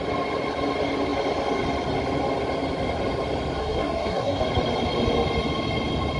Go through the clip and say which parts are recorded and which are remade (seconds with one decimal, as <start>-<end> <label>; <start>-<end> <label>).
0.0-3.6 recorded; 3.6-4.4 remade; 4.4-6.2 recorded